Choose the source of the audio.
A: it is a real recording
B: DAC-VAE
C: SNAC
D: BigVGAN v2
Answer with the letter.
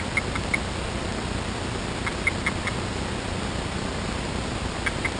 A